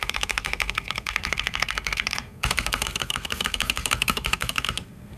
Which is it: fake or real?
fake